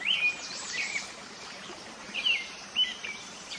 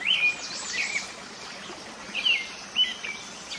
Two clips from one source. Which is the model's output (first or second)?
first